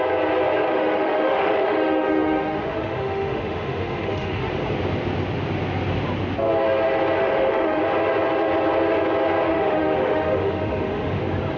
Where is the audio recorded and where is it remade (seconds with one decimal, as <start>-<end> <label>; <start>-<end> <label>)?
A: 0.0-0.7 recorded; 0.7-4.5 remade; 4.5-7.2 recorded; 7.2-7.8 remade; 7.8-9.5 recorded; 9.5-11.2 remade; 11.2-11.6 recorded